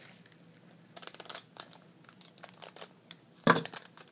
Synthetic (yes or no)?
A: no